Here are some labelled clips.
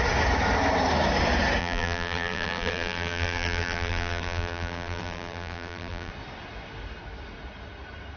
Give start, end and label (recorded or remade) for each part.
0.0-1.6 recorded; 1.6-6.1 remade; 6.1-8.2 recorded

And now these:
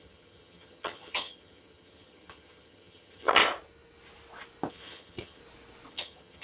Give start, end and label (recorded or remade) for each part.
0.0-3.4 remade; 3.4-4.7 recorded; 4.7-5.4 remade; 5.4-5.9 recorded; 5.9-6.4 remade

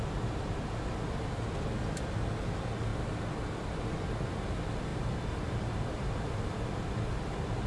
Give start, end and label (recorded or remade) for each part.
0.0-4.9 recorded; 4.9-7.7 remade